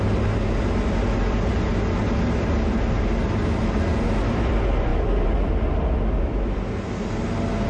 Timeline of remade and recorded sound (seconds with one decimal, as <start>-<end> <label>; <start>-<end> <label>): 0.0-7.7 recorded